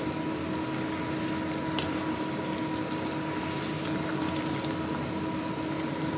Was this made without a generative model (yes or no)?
yes